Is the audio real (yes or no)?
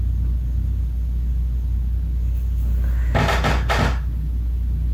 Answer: yes